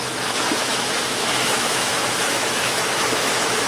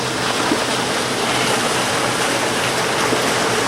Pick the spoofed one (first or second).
first